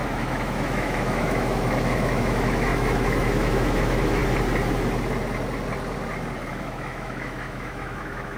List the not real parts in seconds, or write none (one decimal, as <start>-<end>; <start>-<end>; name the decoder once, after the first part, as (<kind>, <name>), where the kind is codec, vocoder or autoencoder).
0.0-4.2 (autoencoder, DAC-VAE); 6.5-8.4